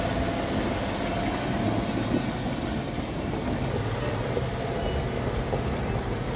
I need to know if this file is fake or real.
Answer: real